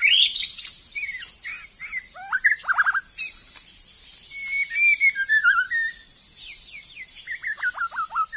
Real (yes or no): yes